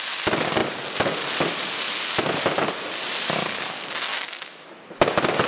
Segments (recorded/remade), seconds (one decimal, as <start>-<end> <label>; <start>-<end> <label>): 0.0-4.1 recorded; 4.1-4.7 remade; 4.7-5.5 recorded